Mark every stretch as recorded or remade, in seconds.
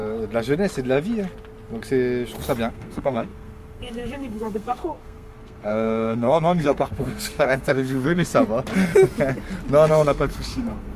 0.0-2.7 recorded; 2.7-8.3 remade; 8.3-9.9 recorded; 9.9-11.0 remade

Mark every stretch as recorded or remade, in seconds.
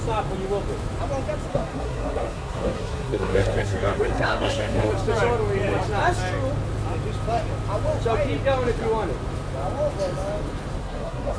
0.0-1.5 recorded; 1.5-4.9 remade; 4.9-10.8 recorded; 10.8-11.4 remade